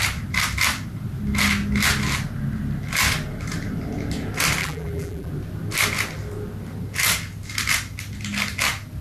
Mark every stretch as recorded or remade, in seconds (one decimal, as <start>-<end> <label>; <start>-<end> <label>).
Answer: 0.0-4.6 recorded; 4.6-5.3 remade; 5.3-9.0 recorded